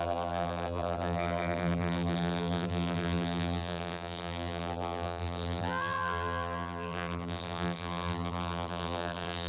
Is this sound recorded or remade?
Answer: remade